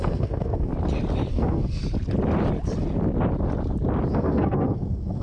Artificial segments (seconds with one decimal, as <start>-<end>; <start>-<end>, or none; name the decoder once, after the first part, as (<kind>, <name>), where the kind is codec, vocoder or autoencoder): 0.0-0.7 (codec, SNAC); 1.3-1.8; 4.1-5.2